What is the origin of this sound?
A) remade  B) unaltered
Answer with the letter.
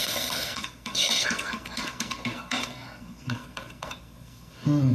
A